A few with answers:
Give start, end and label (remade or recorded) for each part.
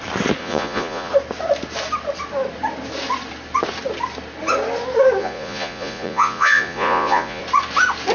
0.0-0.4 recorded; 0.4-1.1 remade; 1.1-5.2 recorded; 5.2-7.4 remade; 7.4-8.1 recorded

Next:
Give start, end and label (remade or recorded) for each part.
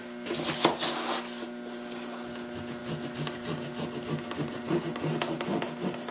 0.0-6.1 recorded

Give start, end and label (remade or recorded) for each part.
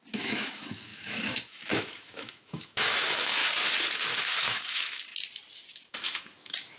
0.0-3.4 remade; 3.4-4.2 recorded; 4.2-5.1 remade; 5.1-5.7 recorded; 5.7-6.8 remade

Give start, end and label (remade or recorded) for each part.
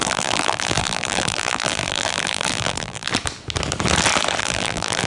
0.0-3.1 remade; 3.1-4.4 recorded; 4.4-5.1 remade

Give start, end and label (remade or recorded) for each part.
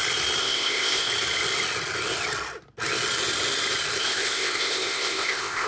0.0-0.4 recorded; 0.4-1.1 remade; 1.1-4.0 recorded; 4.0-5.7 remade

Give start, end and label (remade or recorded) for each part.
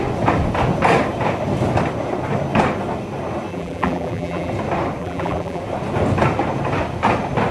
0.0-3.5 recorded; 3.5-4.5 remade; 4.5-5.0 recorded; 5.0-5.6 remade; 5.6-7.5 recorded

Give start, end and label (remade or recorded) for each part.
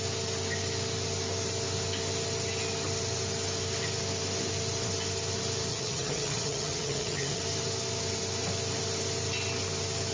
0.0-5.7 recorded; 5.7-7.4 remade; 7.4-10.1 recorded